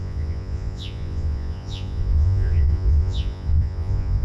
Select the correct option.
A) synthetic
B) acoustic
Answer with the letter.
A